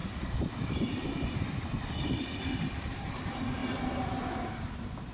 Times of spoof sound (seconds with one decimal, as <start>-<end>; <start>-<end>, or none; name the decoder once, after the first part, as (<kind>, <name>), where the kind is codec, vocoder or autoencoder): 0.0-3.1 (vocoder, BigVGAN v2); 3.6-4.5